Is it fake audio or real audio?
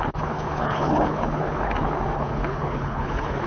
fake